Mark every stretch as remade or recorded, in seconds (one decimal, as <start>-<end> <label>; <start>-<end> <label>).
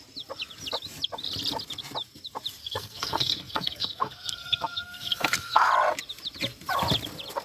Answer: 0.0-2.6 recorded; 2.6-5.7 remade; 5.7-7.4 recorded